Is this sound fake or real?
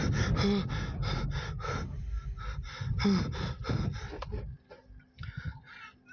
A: real